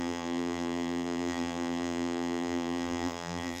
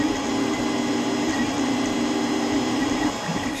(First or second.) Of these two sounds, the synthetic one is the first